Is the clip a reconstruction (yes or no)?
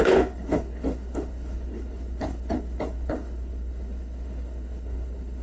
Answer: yes